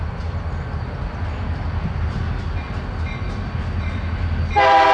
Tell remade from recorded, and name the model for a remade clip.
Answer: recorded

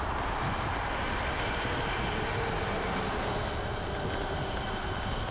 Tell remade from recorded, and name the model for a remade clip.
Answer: recorded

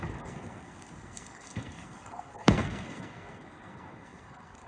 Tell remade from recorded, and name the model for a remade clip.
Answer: remade, codec, SNAC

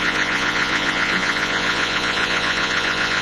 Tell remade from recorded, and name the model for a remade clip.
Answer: remade, vocoder, Vocos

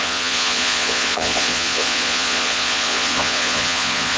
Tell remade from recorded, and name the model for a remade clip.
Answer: remade, vocoder, Vocos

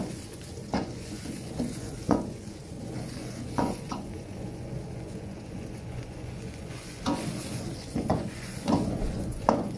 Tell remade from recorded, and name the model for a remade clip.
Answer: remade, vocoder, Vocos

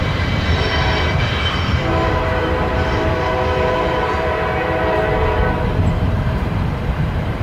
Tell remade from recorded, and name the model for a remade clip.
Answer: remade, vocoder, BigVGAN v2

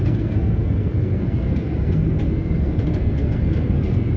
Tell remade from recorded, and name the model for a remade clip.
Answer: remade, codec, SNAC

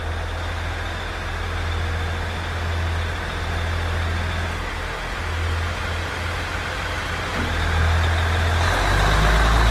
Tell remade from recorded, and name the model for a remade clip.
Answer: recorded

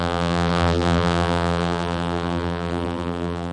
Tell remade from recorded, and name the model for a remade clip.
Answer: remade, vocoder, BigVGAN v2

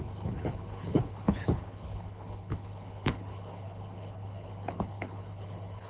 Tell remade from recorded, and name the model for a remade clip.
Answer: remade, codec, HILCodec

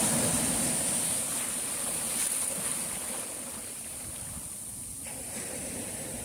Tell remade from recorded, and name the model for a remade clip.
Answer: remade, vocoder, BigVGAN v2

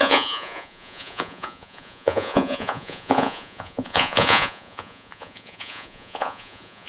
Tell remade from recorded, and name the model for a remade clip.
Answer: remade, vocoder, Vocos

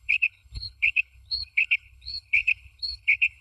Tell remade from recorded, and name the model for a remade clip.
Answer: remade, codec, HILCodec